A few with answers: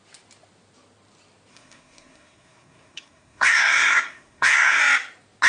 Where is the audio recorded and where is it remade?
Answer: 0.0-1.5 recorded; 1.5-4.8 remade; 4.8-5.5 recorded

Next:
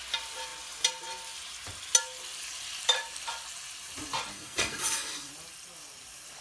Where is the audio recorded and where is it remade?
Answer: 0.0-4.3 recorded; 4.3-5.3 remade; 5.3-6.4 recorded

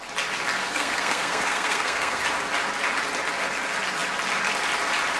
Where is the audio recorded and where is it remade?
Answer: 0.0-0.6 recorded; 0.6-2.2 remade; 2.2-5.2 recorded

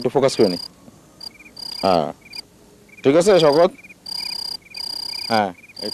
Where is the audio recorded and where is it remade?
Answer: 0.0-5.9 recorded

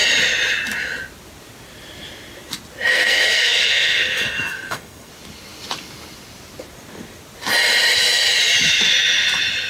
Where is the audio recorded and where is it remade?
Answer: 0.0-2.9 recorded; 2.9-5.1 remade; 5.1-9.7 recorded